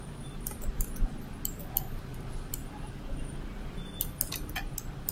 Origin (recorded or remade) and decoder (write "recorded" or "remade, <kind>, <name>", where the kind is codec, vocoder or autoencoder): recorded